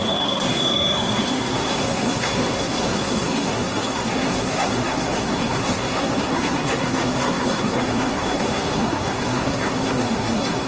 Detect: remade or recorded remade